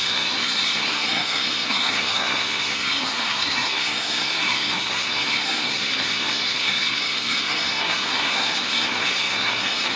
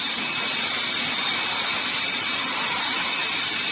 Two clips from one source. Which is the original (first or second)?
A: second